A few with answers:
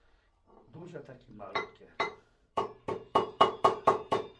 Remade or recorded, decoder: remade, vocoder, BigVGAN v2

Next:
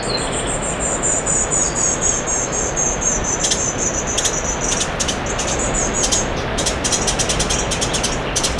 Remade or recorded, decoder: recorded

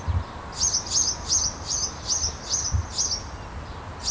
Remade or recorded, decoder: recorded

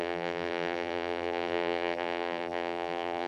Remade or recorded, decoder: remade, vocoder, BigVGAN v2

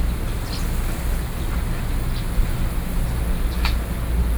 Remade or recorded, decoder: recorded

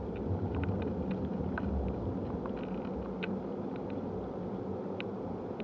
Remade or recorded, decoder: recorded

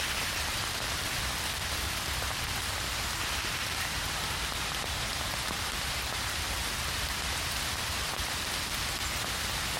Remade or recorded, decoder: recorded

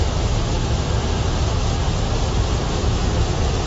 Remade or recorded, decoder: recorded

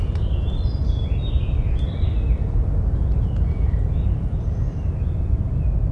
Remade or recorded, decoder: recorded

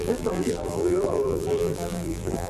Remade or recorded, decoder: remade, vocoder, BigVGAN v2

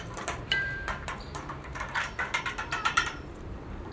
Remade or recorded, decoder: remade, vocoder, BigVGAN v2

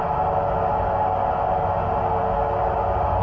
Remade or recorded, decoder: recorded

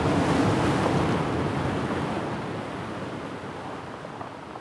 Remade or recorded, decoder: recorded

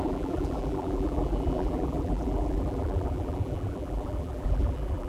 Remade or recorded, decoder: remade, vocoder, BigVGAN v2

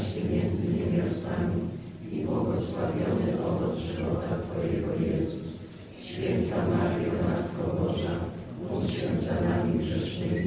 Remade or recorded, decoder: recorded